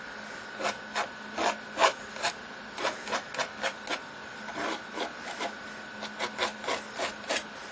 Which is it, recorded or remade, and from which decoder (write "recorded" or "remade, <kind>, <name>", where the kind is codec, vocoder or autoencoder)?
recorded